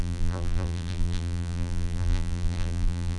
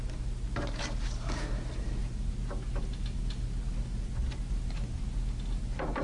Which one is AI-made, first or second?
first